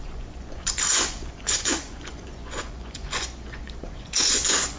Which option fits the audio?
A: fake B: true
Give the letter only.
A